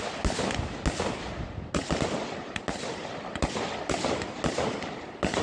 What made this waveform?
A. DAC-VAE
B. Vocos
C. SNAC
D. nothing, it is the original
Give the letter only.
D